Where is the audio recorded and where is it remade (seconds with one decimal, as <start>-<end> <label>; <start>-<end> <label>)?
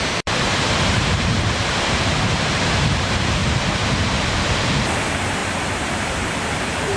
0.0-7.0 remade